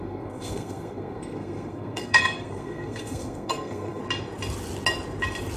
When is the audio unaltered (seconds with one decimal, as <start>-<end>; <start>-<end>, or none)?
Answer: 4.0-5.6